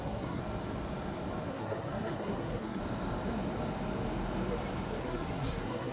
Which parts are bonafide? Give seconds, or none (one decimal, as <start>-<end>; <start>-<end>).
0.4-1.5; 2.8-5.0

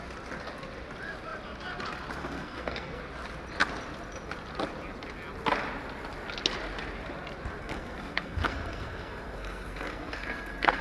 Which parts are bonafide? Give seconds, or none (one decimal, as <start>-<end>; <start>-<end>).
0.0-2.2; 3.0-7.6

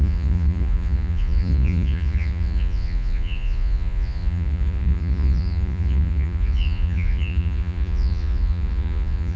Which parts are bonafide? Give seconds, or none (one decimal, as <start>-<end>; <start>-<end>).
none

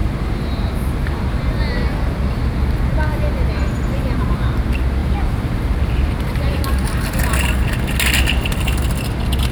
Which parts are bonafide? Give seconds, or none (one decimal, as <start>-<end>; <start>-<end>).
1.4-5.0; 6.6-9.5

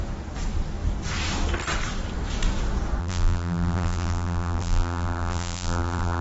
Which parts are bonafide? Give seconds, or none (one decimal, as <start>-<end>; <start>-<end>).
0.0-3.0

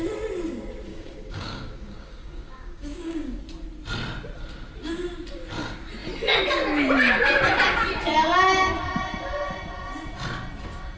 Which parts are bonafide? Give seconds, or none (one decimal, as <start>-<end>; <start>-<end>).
0.0-0.9; 3.4-11.0

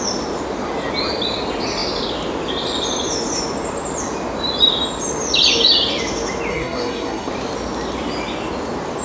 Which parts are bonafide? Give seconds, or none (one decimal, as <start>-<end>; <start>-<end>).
0.0-6.5; 7.3-9.0

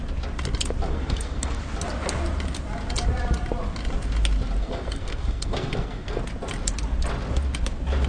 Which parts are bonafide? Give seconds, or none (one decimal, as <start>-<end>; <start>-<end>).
0.0-0.9; 1.6-4.6; 6.2-8.1